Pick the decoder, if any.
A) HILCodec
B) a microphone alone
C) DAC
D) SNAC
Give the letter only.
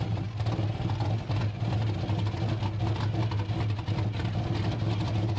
B